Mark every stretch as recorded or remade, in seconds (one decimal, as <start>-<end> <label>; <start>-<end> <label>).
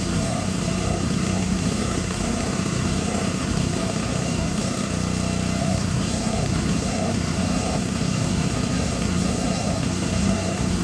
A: 0.0-4.9 remade; 4.9-5.6 recorded; 5.6-10.8 remade